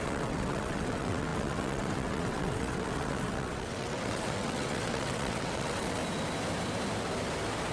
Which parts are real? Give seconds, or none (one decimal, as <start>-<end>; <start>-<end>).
6.0-7.7